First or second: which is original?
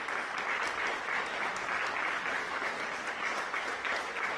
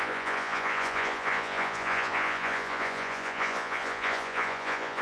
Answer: first